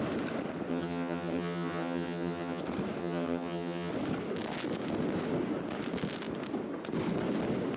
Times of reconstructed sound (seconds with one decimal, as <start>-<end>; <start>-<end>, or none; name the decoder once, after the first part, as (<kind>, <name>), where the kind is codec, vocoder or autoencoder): 0.7-2.6 (vocoder, HiFi-GAN); 3.0-3.9